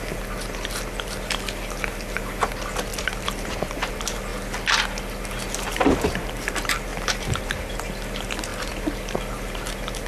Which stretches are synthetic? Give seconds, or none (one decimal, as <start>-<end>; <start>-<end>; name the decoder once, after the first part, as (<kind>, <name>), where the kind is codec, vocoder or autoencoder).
2.9-3.9 (vocoder, BigVGAN v2); 6.9-7.5; 8.5-9.7